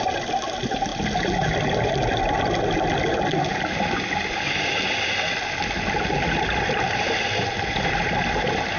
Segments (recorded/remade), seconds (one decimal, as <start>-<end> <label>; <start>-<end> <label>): 0.0-8.8 recorded